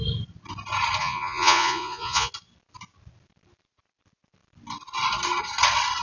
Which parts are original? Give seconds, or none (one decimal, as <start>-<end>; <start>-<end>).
0.0-1.0; 2.3-6.0